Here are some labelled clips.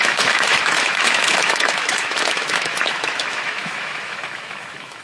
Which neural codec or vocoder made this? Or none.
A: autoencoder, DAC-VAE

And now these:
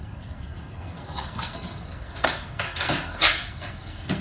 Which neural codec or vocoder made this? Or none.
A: codec, SNAC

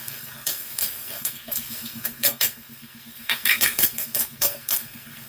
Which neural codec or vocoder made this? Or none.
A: codec, SNAC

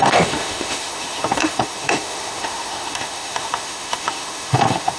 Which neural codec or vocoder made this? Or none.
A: autoencoder, DAC-VAE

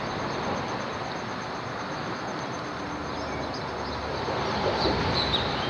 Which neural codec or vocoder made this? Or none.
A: none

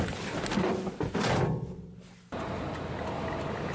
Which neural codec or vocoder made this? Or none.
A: none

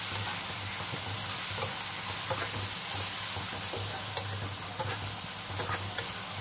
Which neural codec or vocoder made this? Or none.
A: none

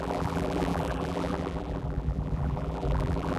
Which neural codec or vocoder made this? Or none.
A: vocoder, BigVGAN v2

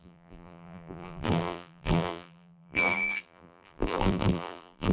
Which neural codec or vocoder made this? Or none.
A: vocoder, BigVGAN v2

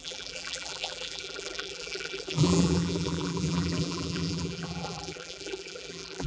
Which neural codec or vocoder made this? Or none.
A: vocoder, BigVGAN v2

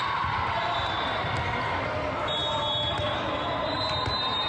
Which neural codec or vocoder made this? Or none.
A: none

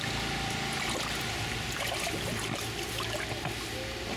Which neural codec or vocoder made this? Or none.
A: none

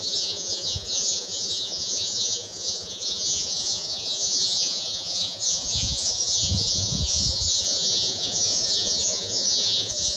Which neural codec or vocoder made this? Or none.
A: vocoder, Vocos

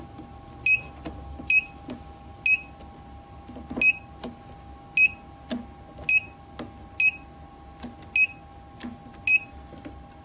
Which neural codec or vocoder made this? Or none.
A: none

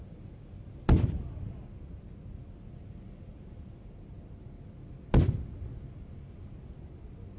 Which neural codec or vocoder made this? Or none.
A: none